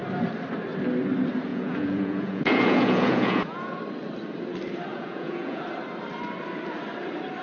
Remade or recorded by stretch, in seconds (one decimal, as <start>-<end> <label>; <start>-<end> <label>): 0.0-1.5 recorded; 1.5-3.8 remade; 3.8-4.9 recorded; 4.9-5.6 remade; 5.6-7.4 recorded